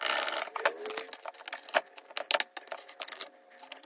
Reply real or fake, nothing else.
real